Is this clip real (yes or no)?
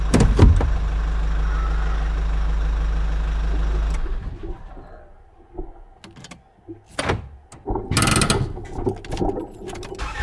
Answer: yes